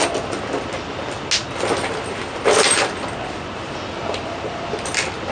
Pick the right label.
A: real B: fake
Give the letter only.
A